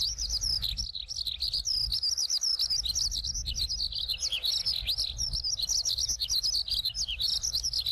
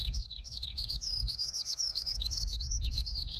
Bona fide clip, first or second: first